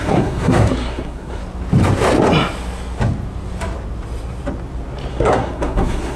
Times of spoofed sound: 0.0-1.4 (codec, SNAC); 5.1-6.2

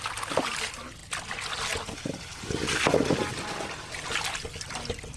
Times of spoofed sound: none

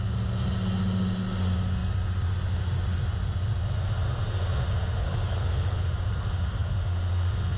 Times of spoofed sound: 5.0-5.9 (codec, HILCodec)

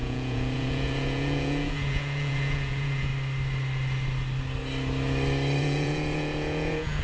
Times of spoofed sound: 0.0-3.1 (vocoder, Vocos); 5.6-7.0

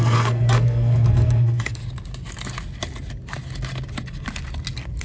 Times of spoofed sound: 0.0-1.8 (codec, SNAC)